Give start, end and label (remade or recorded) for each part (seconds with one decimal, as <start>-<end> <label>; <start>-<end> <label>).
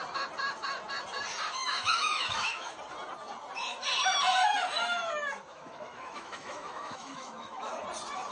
0.0-1.6 recorded; 1.6-2.7 remade; 2.7-5.5 recorded; 5.5-7.7 remade; 7.7-8.3 recorded